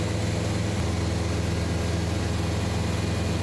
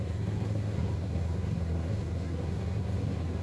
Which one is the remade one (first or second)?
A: second